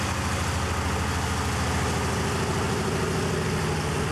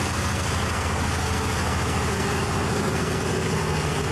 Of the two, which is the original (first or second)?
first